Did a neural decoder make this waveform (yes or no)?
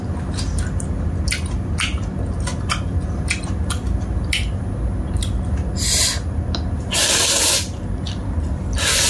no